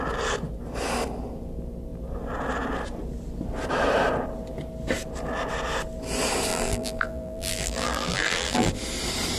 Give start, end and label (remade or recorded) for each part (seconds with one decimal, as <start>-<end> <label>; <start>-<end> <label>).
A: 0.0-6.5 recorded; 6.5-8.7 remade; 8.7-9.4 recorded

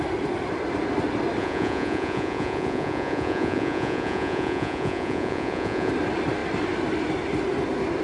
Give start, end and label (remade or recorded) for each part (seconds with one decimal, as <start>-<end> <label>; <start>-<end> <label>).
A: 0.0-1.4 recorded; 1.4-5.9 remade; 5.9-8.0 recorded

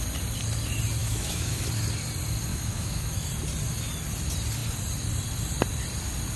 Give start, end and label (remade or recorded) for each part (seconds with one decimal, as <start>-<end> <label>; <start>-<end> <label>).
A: 0.0-1.0 recorded; 1.0-1.6 remade; 1.6-2.5 recorded; 2.5-3.3 remade; 3.3-6.4 recorded

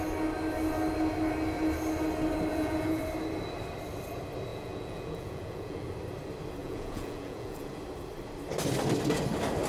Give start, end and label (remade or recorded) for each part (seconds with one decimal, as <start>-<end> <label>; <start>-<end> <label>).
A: 0.0-2.5 recorded; 2.5-3.0 remade; 3.0-4.5 recorded; 4.5-5.9 remade; 5.9-6.6 recorded; 6.6-7.8 remade; 7.8-9.7 recorded

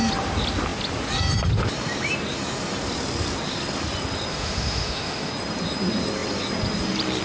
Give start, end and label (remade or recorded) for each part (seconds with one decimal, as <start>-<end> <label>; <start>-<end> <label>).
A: 0.0-4.3 recorded; 4.3-5.3 remade; 5.3-7.2 recorded